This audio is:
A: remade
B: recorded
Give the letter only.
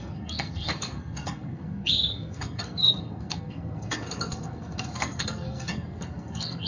A